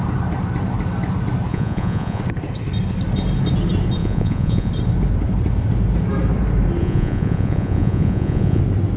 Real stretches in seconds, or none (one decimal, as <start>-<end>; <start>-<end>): 0.0-1.5; 2.2-4.0; 4.7-6.8; 8.6-9.0